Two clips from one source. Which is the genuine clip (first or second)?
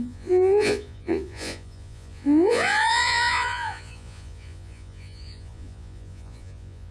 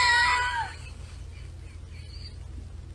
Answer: second